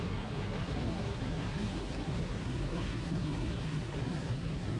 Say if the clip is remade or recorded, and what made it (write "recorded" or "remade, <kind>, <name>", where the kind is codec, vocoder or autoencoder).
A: remade, codec, SNAC